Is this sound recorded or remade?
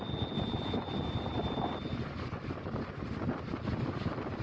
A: recorded